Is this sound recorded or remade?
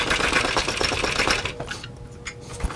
recorded